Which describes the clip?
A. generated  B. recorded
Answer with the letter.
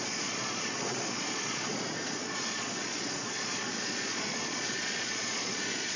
A